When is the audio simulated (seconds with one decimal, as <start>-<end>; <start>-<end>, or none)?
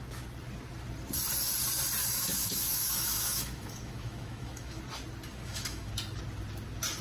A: 2.0-4.8; 5.3-5.9